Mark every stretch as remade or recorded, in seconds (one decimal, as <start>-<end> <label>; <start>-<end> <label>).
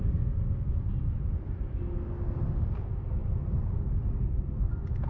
0.0-5.1 recorded